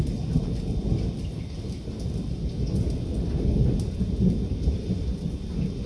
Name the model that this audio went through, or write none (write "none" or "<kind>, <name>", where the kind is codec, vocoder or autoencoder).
none